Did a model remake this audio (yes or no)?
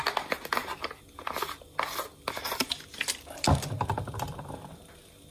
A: no